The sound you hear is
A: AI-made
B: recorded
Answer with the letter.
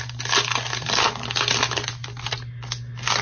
B